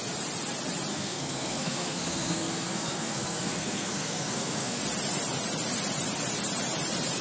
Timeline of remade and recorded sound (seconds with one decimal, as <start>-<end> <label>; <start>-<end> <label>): 0.0-0.9 recorded; 0.9-4.8 remade; 4.8-7.2 recorded